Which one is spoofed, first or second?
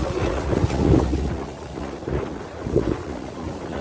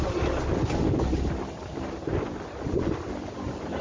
first